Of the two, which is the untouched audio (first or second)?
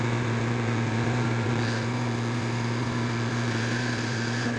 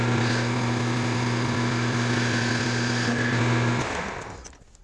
second